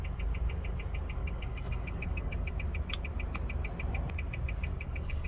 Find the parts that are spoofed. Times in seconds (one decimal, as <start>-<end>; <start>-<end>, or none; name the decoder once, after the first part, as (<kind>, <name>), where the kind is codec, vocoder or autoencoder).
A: 1.2-2.5 (codec, DAC); 4.7-5.3